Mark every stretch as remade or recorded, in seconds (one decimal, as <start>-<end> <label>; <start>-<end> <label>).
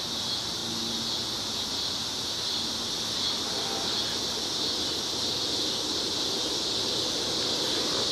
0.0-0.6 recorded; 0.6-1.4 remade; 1.4-8.1 recorded